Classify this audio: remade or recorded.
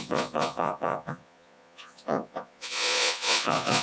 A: remade